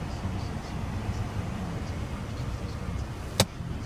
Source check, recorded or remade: recorded